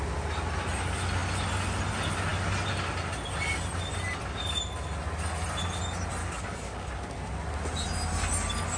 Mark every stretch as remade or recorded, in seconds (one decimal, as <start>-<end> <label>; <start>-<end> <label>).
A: 0.0-6.2 recorded; 6.2-6.9 remade; 6.9-8.8 recorded